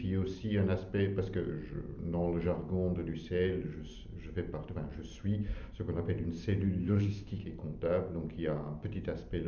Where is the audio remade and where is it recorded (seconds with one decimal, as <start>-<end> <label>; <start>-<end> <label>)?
0.0-6.8 recorded; 6.8-7.4 remade; 7.4-9.5 recorded